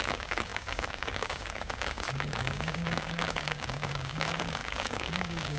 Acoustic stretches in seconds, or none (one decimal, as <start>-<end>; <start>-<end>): none